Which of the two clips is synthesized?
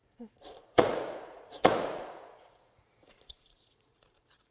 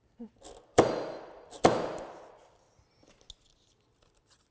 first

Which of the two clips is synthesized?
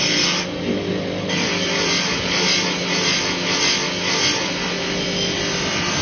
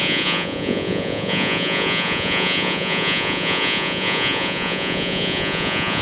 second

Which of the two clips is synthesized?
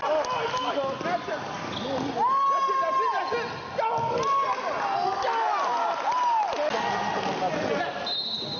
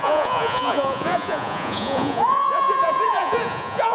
second